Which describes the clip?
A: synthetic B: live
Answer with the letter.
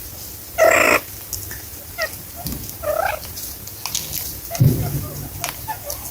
B